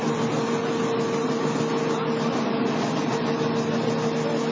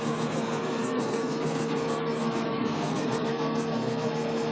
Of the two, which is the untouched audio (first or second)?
first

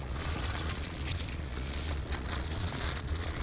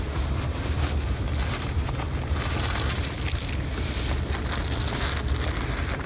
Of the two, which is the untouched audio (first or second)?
second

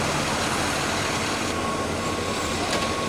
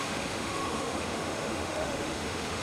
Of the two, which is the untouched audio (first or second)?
first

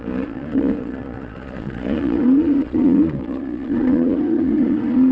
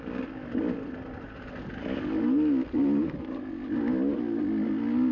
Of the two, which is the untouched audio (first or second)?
second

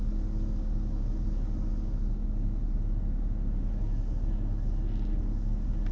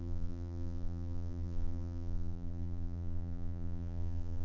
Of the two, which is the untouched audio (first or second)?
first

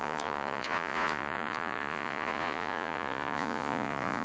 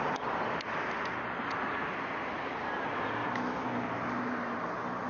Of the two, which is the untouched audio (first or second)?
second